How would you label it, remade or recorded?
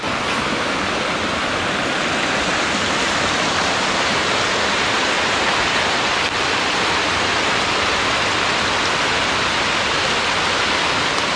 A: recorded